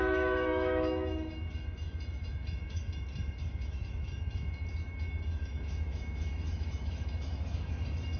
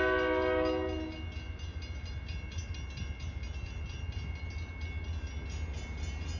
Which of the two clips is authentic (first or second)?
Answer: second